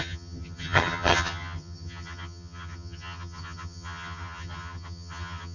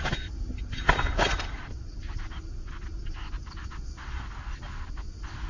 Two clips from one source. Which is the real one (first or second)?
second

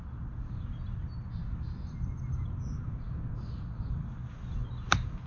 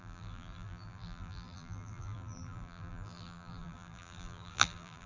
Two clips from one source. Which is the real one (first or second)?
first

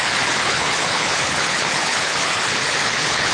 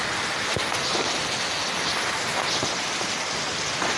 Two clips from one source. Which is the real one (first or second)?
second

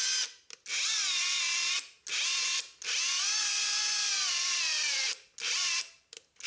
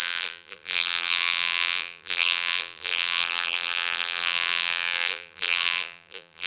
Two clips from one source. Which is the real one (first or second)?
first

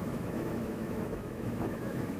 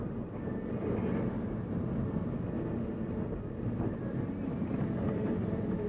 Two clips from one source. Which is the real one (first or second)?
second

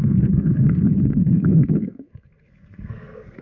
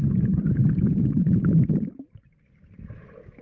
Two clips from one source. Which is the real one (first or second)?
second